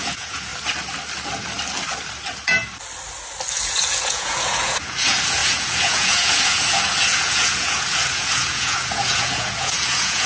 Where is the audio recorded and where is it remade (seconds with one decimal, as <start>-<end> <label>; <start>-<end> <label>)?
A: 0.0-0.5 remade; 0.5-3.5 recorded; 3.5-10.3 remade